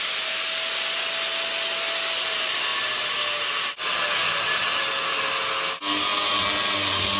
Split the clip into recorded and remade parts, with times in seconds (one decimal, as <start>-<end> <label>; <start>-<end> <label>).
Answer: 0.0-7.2 recorded